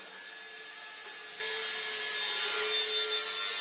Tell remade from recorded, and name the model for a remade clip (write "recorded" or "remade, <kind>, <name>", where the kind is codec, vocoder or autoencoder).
recorded